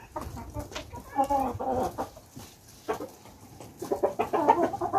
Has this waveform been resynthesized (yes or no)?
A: no